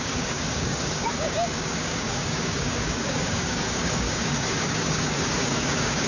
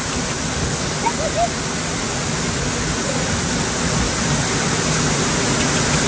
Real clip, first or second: second